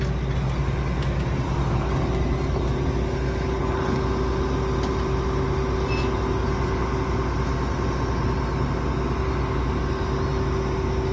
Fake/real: real